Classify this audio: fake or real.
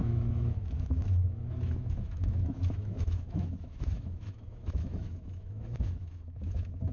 fake